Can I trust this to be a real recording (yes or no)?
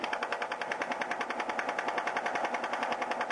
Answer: yes